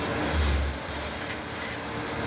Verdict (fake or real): real